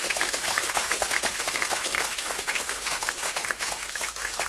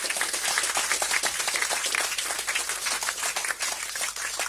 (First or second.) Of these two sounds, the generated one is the first